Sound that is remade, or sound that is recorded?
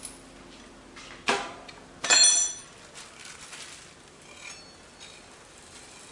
recorded